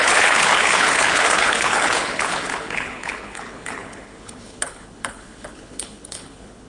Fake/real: fake